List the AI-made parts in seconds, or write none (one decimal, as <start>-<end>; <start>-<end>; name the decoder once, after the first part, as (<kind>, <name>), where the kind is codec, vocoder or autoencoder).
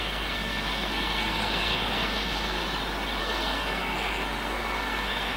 0.0-2.6 (codec, SNAC); 3.2-5.4